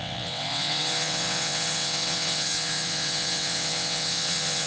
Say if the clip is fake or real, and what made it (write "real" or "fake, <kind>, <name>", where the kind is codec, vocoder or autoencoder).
fake, vocoder, WaveNeXt